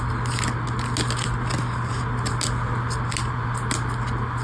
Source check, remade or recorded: recorded